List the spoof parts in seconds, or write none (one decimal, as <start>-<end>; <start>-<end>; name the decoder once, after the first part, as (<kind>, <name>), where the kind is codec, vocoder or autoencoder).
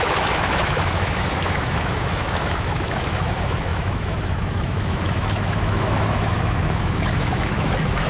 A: 0.0-8.1 (autoencoder, DAC-VAE)